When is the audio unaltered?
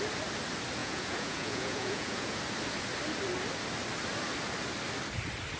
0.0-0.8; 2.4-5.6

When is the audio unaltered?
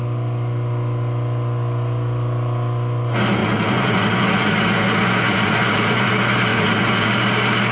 0.0-3.4; 6.1-6.5; 7.1-7.7